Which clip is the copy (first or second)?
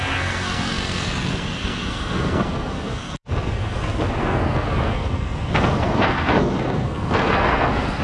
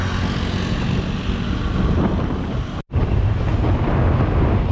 first